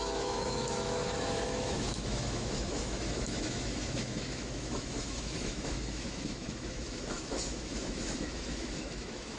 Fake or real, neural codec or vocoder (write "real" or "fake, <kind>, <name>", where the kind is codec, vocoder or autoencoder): fake, autoencoder, DAC-VAE